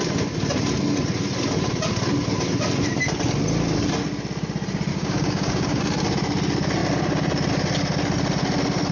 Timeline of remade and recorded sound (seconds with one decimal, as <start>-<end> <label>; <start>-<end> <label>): 0.0-4.9 recorded; 4.9-5.8 remade; 5.8-8.9 recorded